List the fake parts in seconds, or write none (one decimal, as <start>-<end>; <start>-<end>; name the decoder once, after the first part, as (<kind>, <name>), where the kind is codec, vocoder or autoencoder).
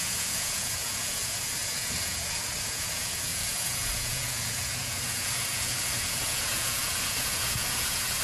0.0-8.2 (vocoder, Vocos)